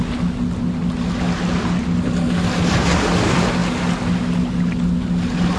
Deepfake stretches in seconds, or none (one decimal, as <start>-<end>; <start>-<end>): none